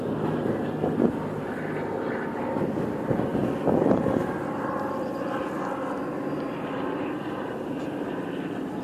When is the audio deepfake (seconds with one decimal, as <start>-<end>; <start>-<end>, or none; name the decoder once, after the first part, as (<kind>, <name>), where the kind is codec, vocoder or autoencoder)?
none